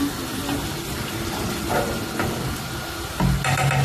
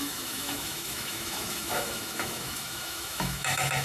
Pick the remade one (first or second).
second